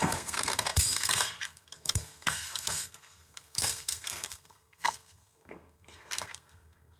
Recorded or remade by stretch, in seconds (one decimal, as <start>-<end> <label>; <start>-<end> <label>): 0.0-7.0 remade